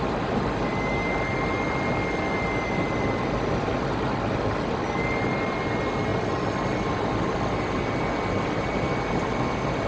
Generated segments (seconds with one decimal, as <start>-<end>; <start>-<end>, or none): none